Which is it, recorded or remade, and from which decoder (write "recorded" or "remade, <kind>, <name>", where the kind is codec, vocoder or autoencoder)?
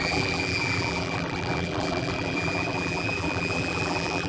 remade, vocoder, BigVGAN v2